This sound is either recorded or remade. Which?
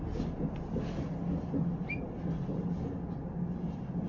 recorded